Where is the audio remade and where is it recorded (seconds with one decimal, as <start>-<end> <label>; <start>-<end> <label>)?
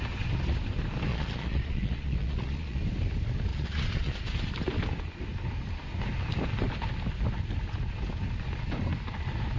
0.0-1.1 recorded; 1.1-2.8 remade; 2.8-3.5 recorded; 3.5-4.1 remade; 4.1-9.6 recorded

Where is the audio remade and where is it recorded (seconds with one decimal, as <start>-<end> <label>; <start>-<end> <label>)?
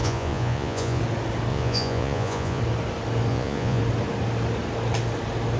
0.0-1.0 remade; 1.0-1.5 recorded; 1.5-2.6 remade; 2.6-3.3 recorded; 3.3-3.8 remade; 3.8-5.6 recorded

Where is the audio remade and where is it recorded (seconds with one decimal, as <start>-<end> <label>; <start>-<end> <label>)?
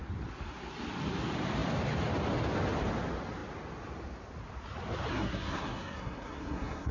0.0-5.1 recorded; 5.1-6.9 remade